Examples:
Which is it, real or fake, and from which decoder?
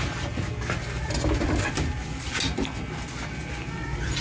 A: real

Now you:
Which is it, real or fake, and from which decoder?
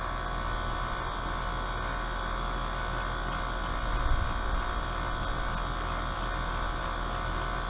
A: real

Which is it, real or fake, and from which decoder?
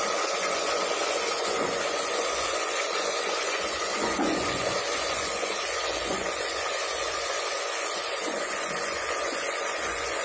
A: fake, vocoder, Vocos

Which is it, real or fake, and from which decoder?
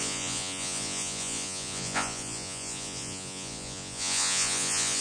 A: fake, vocoder, Vocos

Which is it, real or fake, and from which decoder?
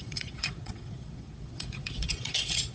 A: fake, vocoder, Vocos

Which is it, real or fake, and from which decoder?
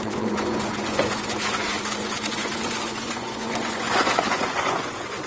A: fake, vocoder, Vocos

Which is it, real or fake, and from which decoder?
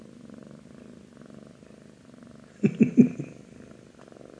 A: real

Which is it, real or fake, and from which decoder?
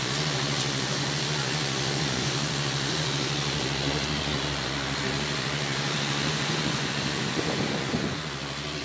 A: fake, vocoder, Vocos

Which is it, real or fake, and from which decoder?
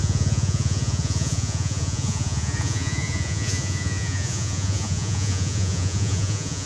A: fake, vocoder, Vocos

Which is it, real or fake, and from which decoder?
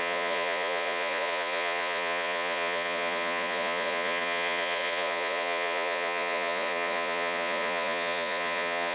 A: fake, vocoder, Vocos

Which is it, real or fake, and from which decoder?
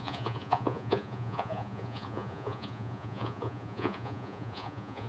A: fake, vocoder, Vocos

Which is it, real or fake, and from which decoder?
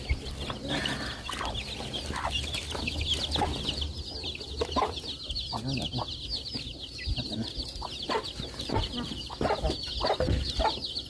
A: real